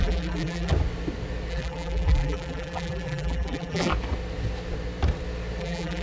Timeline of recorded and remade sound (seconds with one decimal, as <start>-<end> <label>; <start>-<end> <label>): 0.0-0.7 remade; 0.7-1.5 recorded; 1.5-3.9 remade; 3.9-5.6 recorded; 5.6-6.0 remade